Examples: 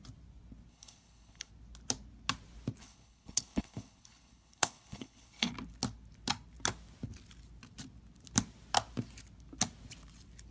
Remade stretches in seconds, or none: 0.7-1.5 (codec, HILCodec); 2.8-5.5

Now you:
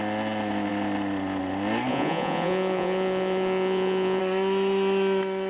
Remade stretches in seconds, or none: 1.9-4.2 (vocoder, Vocos)

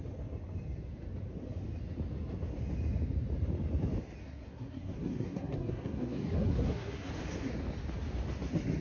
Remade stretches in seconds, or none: 4.2-7.1 (codec, SNAC)